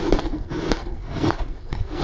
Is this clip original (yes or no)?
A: no